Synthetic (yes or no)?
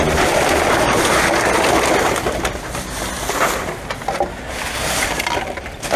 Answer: no